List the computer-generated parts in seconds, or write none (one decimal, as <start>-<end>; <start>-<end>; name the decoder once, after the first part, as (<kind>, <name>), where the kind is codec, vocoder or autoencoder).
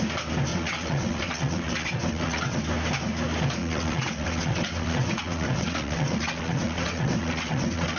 0.5-2.6 (vocoder, WaveNeXt); 3.6-8.0